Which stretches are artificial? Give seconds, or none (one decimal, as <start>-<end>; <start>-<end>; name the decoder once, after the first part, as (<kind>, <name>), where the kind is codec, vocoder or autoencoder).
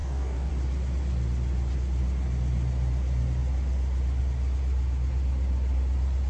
0.0-0.5 (codec, DAC)